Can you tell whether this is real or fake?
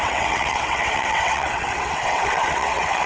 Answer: fake